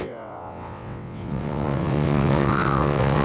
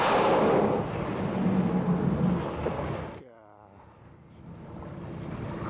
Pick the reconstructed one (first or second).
first